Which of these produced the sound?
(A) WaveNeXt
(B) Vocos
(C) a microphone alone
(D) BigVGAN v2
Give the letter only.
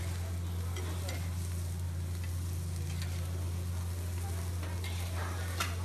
C